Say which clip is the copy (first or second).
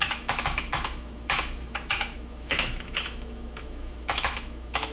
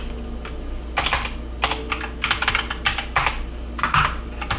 first